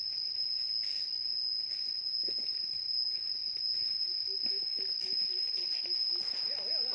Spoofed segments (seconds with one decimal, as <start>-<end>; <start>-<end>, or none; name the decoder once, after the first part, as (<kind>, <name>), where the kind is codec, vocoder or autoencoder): none